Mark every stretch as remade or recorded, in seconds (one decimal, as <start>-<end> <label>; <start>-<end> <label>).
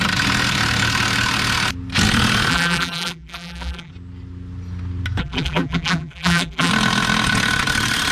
0.0-2.5 recorded; 2.5-3.9 remade; 3.9-5.2 recorded; 5.2-6.7 remade; 6.7-8.1 recorded